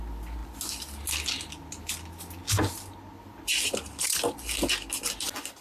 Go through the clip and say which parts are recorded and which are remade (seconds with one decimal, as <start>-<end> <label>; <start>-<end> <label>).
0.0-5.6 recorded